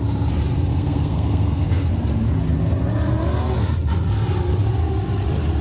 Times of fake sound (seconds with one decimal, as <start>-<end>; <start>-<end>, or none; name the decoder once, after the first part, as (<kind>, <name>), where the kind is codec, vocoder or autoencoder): 0.7-1.9 (codec, SNAC)